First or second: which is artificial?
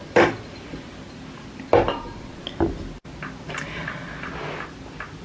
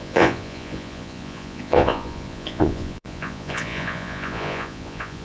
second